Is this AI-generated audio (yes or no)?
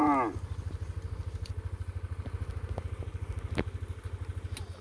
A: no